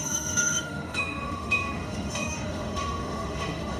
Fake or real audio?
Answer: fake